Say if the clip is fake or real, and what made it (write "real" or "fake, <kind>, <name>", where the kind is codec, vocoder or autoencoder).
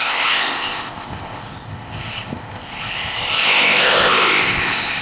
fake, codec, ZipCodec